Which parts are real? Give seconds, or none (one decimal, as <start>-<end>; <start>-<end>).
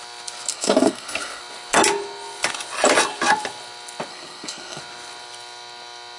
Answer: 0.0-0.5; 1.4-4.1; 4.8-6.2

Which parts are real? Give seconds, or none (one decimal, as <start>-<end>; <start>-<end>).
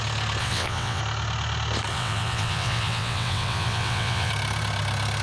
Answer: 0.0-0.4; 1.0-1.9; 4.3-5.2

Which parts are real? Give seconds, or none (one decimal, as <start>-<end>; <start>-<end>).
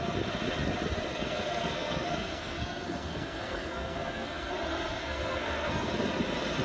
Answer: 0.0-1.1; 4.5-5.0; 5.9-6.6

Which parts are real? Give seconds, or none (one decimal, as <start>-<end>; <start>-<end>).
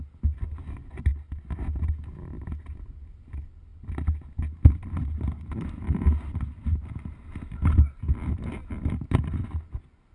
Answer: 0.0-10.1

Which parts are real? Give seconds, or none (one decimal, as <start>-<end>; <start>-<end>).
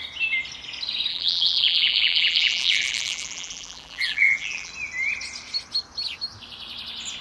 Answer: 0.0-1.1; 4.7-7.2